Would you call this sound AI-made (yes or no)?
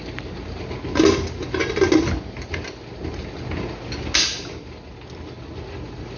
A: no